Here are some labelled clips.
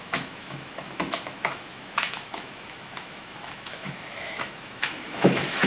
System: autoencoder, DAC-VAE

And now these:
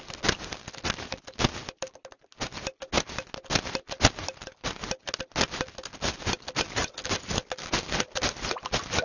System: none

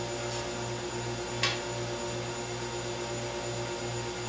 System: none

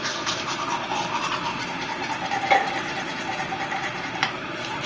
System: vocoder, BigVGAN v2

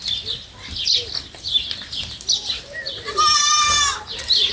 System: none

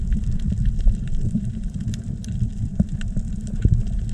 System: vocoder, BigVGAN v2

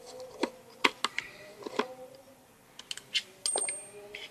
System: none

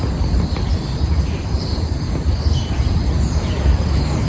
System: none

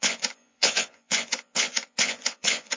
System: vocoder, Vocos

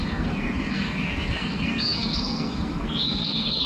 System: codec, SNAC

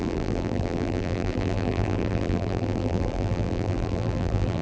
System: vocoder, BigVGAN v2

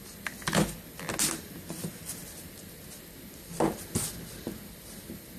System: none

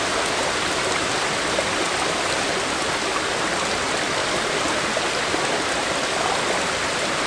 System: none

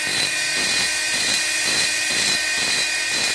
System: vocoder, BigVGAN v2